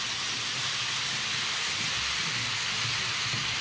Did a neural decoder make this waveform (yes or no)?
no